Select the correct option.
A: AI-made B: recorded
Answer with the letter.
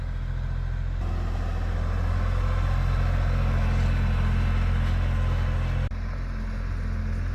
B